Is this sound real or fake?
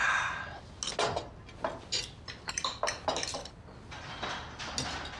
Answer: real